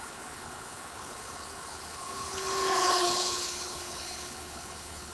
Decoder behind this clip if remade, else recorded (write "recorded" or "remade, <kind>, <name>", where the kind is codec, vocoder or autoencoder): remade, codec, HILCodec